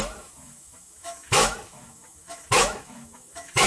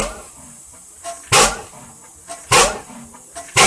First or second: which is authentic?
second